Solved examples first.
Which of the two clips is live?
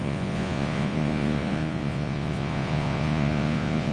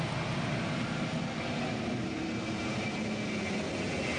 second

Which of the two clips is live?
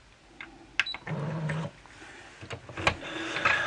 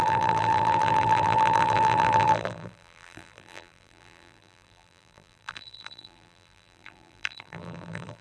first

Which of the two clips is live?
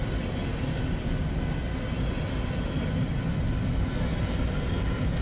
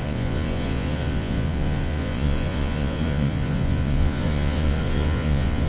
first